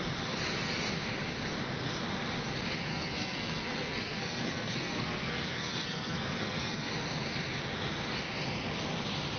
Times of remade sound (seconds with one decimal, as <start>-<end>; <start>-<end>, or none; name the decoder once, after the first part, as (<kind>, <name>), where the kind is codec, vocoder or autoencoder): 2.9-6.9 (codec, SNAC)